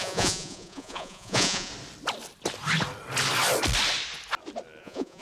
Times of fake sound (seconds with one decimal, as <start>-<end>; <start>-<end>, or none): 0.0-1.7; 4.8-5.2